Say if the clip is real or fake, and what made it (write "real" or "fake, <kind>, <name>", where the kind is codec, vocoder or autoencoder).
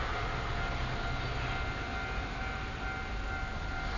real